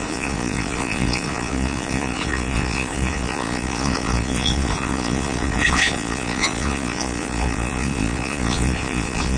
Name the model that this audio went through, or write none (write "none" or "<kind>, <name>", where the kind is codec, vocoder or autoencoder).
vocoder, Vocos